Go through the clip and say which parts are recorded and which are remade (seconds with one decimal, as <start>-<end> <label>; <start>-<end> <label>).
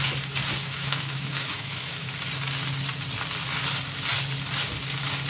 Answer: 0.0-0.6 recorded; 0.6-2.1 remade; 2.1-5.3 recorded